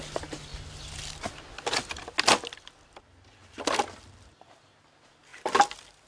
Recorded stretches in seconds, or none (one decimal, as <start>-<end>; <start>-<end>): 0.0-3.4; 4.5-5.3